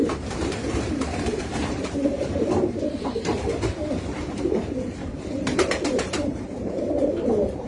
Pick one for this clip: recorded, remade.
remade